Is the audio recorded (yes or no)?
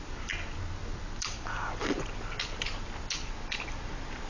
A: yes